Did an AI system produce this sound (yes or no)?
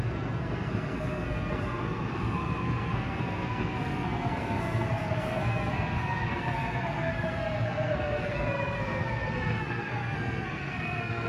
yes